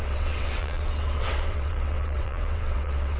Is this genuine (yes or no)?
no